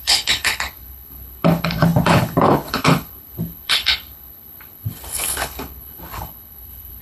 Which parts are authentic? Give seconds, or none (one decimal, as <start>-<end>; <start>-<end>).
none